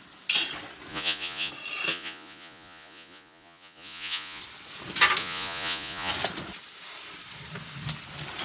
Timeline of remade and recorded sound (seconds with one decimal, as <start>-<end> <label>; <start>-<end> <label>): 0.0-0.9 recorded; 0.9-1.5 remade; 1.5-1.9 recorded; 1.9-4.4 remade; 4.4-5.2 recorded; 5.2-6.1 remade; 6.1-8.4 recorded